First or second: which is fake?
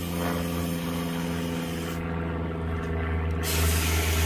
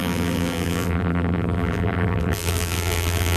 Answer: second